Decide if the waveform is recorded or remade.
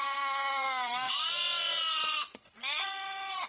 remade